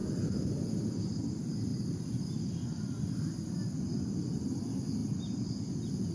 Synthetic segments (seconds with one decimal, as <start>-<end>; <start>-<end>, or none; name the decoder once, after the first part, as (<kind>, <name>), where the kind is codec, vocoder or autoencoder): 1.7-2.5 (vocoder, BigVGAN v2)